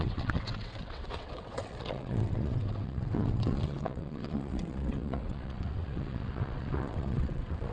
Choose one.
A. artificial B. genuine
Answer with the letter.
A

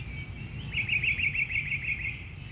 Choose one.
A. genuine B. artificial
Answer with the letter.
A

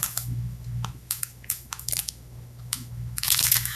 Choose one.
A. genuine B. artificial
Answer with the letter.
B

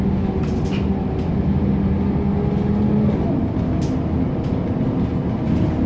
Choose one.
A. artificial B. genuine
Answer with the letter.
B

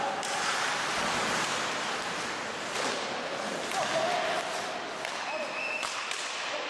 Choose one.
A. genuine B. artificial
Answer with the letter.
A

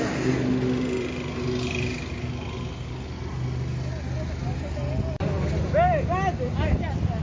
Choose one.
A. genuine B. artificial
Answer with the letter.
A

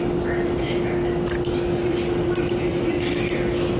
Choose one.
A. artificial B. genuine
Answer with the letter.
B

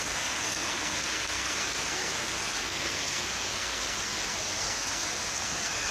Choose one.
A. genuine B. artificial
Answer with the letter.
B